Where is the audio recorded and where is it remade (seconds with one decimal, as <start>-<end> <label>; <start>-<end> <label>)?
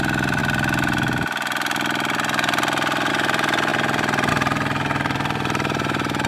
0.0-0.4 remade; 0.4-3.1 recorded; 3.1-3.7 remade; 3.7-4.3 recorded; 4.3-6.3 remade